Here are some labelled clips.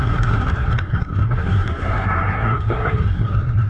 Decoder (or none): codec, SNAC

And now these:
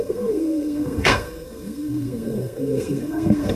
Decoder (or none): codec, SNAC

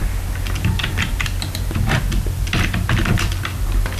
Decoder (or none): none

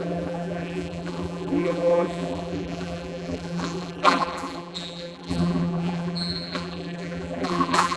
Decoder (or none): vocoder, BigVGAN v2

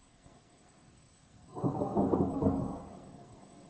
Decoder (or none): codec, SNAC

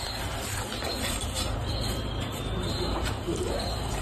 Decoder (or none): vocoder, BigVGAN v2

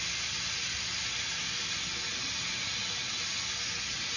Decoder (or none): none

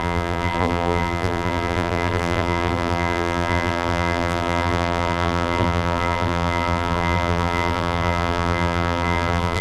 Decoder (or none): vocoder, BigVGAN v2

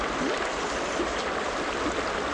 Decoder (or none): none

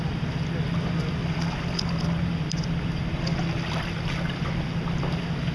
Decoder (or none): none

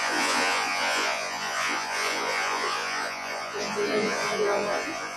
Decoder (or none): vocoder, Vocos